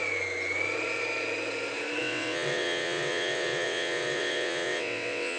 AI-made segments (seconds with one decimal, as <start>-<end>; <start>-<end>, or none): 2.0-5.4